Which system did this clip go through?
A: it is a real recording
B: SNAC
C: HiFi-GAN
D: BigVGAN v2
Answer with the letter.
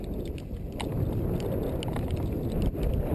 A